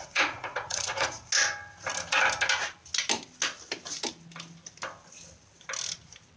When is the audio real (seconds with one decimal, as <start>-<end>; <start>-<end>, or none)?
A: 1.3-6.4